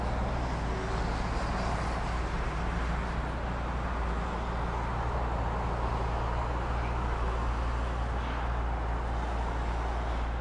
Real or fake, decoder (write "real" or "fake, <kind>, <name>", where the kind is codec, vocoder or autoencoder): real